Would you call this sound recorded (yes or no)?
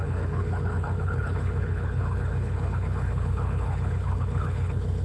no